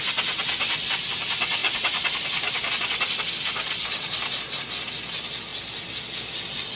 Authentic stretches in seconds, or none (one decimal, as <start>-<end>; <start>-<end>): 0.0-1.6; 2.7-6.8